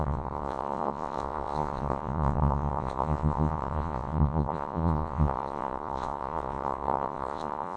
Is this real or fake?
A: fake